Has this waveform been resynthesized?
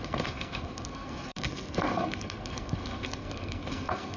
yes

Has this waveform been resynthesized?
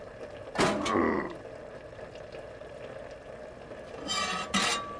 no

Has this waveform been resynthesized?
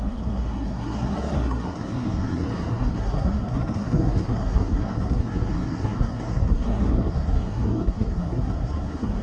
yes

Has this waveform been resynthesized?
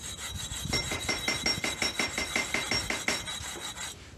no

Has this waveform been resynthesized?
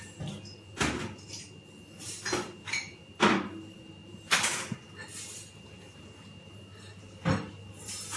no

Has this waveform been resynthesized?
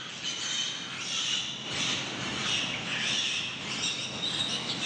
no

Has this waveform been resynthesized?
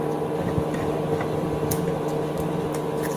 no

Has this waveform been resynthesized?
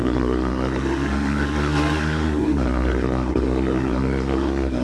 yes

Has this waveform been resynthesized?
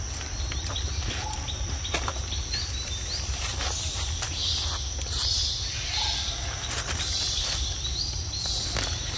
no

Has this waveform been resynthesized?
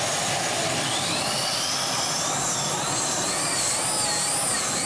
no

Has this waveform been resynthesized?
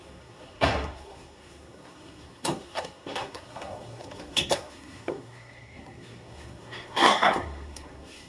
yes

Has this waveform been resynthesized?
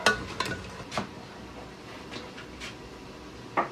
no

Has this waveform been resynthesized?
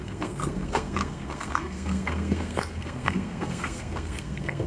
yes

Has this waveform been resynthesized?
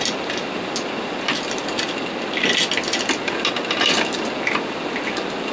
no